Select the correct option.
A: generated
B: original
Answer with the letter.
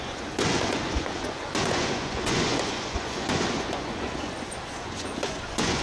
A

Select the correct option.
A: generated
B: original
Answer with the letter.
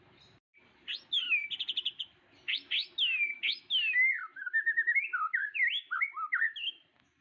B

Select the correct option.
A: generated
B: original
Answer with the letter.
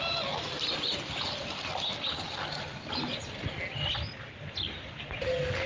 B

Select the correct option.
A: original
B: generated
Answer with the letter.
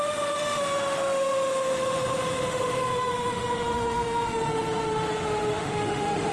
B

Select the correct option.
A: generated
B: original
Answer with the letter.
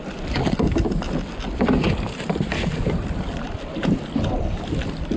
B